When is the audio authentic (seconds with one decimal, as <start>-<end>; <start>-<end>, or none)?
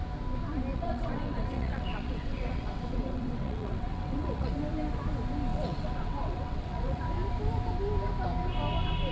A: 0.0-0.7; 4.5-5.5; 7.0-9.1